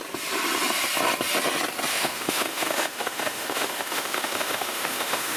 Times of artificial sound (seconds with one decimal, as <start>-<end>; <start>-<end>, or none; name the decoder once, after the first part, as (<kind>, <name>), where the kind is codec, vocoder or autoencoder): 1.9-5.4 (autoencoder, DAC-VAE)